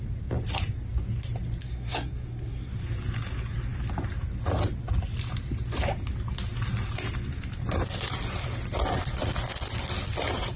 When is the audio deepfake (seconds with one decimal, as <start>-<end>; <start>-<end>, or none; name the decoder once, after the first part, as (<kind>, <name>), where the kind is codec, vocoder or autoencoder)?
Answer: 1.6-2.7 (codec, SNAC)